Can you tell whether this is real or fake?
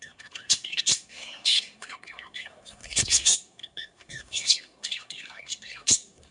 fake